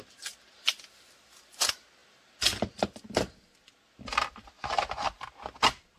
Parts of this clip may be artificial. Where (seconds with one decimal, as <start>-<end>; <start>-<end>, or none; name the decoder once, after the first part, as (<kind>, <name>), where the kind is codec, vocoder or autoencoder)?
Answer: none